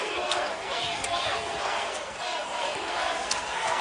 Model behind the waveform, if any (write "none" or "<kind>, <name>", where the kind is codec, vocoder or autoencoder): codec, SNAC